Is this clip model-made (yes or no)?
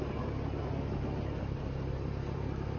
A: no